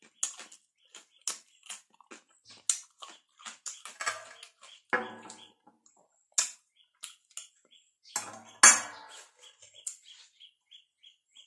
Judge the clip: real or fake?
real